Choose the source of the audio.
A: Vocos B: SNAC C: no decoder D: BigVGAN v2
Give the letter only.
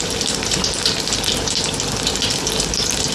C